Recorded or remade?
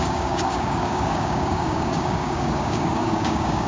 remade